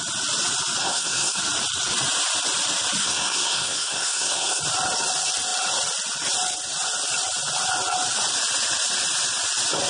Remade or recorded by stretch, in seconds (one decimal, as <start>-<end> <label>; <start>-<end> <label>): 0.0-0.8 recorded; 0.8-1.4 remade; 1.4-3.0 recorded; 3.0-4.6 remade; 4.6-9.9 recorded